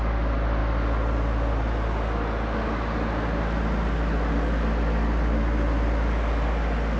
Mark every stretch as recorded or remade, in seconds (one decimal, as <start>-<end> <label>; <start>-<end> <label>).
0.0-7.0 recorded